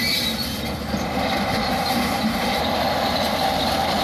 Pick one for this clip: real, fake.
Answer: fake